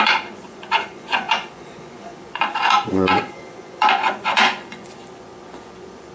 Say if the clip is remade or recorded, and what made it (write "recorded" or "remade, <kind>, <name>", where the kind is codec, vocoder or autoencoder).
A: remade, vocoder, Vocos